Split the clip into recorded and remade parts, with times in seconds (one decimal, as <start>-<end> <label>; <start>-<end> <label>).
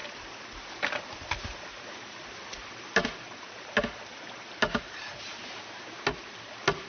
0.0-6.9 recorded